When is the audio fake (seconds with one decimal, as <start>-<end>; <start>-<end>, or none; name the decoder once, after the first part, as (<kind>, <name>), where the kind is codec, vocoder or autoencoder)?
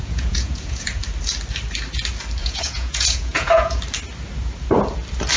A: 0.0-1.0 (vocoder, Vocos); 2.4-3.8